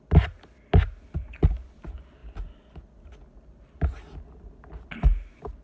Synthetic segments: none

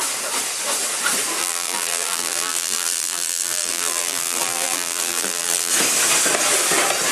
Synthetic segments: 1.4-5.7 (vocoder, BigVGAN v2)

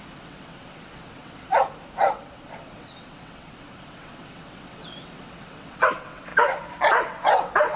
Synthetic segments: 0.0-1.5 (vocoder, WaveNeXt); 2.0-6.3; 6.9-7.8

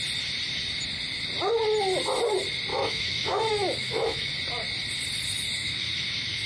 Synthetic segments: 2.7-4.3 (autoencoder, DAC-VAE); 5.6-6.5